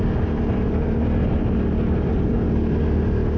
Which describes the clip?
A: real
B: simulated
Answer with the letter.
A